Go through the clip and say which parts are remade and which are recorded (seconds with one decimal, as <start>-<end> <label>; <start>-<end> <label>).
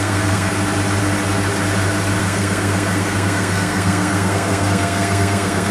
0.0-0.5 remade; 0.5-2.2 recorded; 2.2-5.7 remade